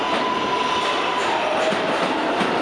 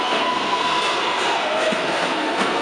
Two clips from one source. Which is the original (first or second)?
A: first